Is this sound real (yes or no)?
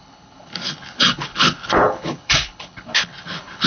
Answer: no